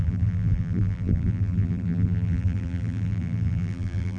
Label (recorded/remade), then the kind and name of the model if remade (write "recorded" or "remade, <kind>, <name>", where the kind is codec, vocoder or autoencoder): remade, vocoder, BigVGAN v2